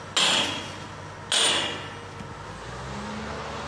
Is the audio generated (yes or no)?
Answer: no